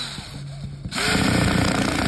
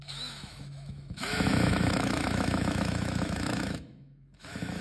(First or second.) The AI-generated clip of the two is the second